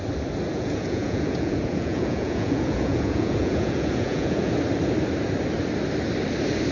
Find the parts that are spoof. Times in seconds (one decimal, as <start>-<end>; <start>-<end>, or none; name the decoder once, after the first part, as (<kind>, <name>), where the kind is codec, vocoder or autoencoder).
0.5-4.5 (vocoder, Vocos)

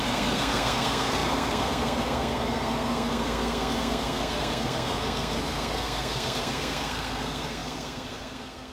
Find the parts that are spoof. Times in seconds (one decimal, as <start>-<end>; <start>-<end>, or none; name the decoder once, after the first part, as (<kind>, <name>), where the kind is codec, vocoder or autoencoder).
0.0-8.7 (codec, SNAC)

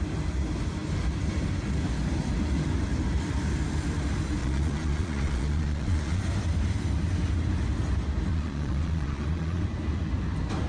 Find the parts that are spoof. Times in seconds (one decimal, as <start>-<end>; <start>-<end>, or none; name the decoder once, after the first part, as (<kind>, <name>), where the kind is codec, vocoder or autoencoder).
4.4-6.2 (vocoder, Vocos); 8.3-9.6

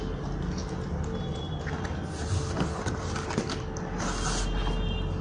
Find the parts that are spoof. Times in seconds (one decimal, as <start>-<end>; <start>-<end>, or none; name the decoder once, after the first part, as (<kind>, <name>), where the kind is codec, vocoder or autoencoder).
none